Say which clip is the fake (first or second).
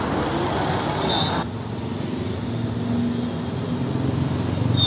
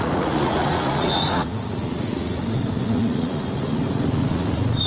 second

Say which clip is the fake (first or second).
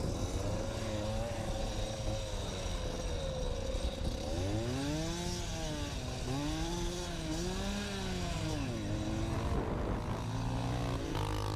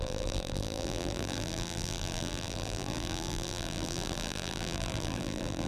second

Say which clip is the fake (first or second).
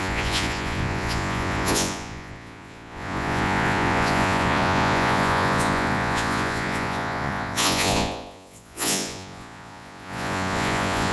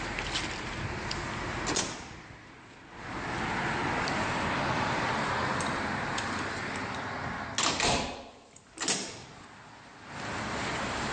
first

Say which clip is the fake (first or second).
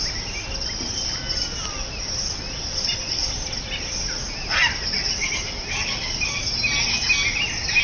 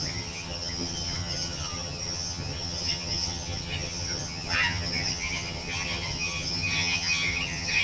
second